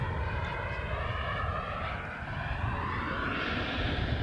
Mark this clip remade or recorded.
recorded